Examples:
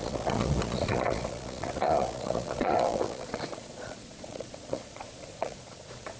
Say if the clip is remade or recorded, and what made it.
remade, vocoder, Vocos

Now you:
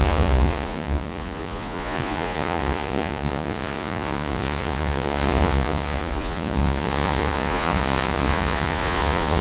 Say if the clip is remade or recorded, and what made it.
remade, vocoder, Vocos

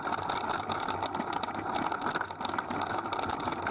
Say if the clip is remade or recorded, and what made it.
recorded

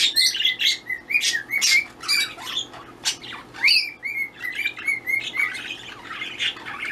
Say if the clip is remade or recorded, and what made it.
recorded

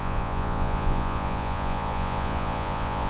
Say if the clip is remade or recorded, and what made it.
remade, vocoder, Vocos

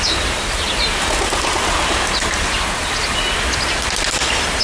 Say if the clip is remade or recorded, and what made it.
recorded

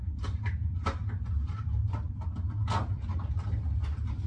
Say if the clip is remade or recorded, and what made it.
recorded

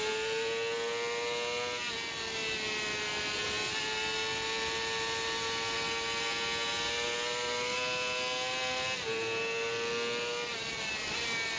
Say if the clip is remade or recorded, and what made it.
recorded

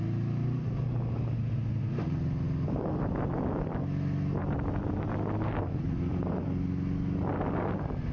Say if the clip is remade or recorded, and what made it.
recorded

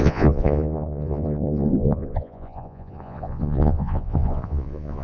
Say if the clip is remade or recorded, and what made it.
remade, vocoder, Vocos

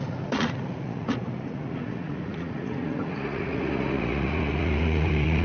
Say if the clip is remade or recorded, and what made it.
remade, vocoder, Vocos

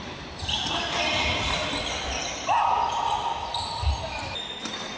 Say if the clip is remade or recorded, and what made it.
recorded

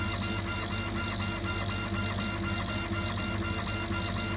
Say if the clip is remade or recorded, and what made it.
recorded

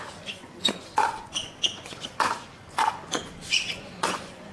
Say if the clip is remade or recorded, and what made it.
remade, vocoder, Vocos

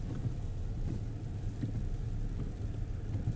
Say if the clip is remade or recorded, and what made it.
recorded